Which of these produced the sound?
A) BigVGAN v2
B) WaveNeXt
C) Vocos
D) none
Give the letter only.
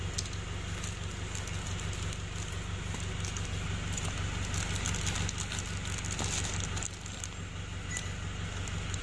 D